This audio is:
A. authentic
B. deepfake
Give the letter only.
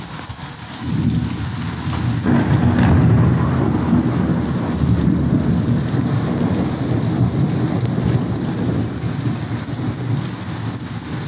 A